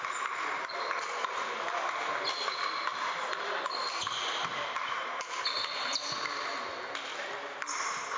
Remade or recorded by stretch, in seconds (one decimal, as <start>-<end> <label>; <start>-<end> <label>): 0.0-8.2 recorded